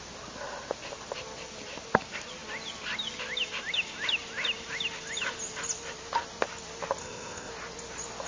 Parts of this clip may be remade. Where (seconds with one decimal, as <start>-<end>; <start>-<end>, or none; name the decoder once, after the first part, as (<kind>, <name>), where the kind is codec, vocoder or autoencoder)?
7.0-7.5 (codec, ZipCodec)